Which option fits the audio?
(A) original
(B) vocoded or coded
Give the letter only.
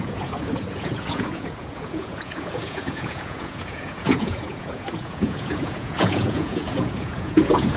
B